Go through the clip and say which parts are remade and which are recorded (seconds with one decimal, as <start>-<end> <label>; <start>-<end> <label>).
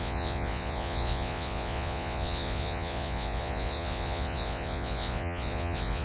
0.0-6.0 remade